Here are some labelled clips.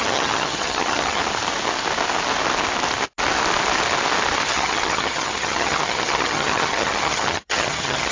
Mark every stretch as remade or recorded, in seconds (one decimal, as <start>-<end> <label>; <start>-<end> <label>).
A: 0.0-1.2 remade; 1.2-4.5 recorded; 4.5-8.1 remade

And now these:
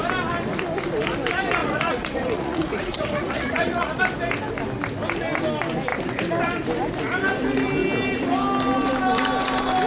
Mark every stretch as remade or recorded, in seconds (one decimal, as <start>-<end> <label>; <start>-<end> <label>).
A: 0.0-1.6 recorded; 1.6-4.0 remade; 4.0-9.9 recorded

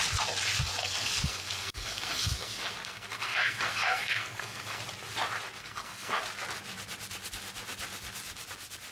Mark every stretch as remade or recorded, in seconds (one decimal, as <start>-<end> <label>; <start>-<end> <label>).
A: 0.0-0.8 recorded; 0.8-4.8 remade; 4.8-5.6 recorded; 5.6-6.2 remade; 6.2-8.9 recorded

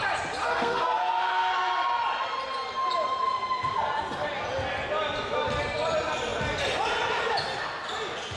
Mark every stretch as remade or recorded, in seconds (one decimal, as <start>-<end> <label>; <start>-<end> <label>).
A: 0.0-0.4 recorded; 0.4-1.5 remade; 1.5-8.4 recorded

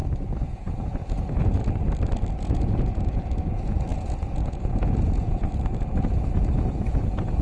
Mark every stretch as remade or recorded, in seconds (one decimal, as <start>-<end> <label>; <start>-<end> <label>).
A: 0.0-1.6 remade; 1.6-2.3 recorded; 2.3-7.4 remade